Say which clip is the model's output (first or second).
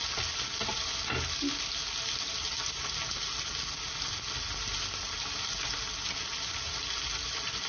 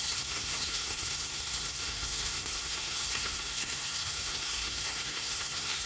second